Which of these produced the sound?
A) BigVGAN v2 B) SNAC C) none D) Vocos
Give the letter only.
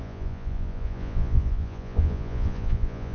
D